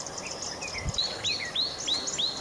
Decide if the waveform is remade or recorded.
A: recorded